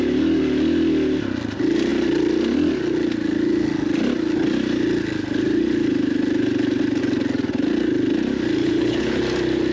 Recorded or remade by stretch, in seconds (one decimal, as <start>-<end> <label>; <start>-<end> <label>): 0.0-8.6 recorded; 8.6-9.2 remade; 9.2-9.7 recorded